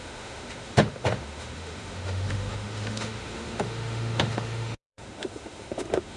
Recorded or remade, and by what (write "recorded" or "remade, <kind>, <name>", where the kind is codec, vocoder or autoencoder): remade, autoencoder, DAC-VAE